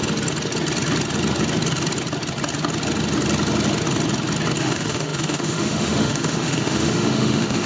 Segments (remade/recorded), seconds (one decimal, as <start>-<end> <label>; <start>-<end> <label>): 0.0-4.6 recorded; 4.6-7.7 remade